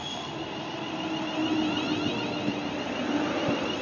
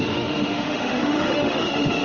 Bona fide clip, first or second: first